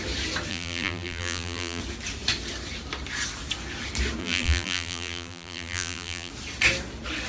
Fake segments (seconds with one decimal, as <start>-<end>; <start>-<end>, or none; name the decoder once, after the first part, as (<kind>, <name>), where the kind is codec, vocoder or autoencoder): 0.5-1.8 (vocoder, BigVGAN v2); 4.2-6.3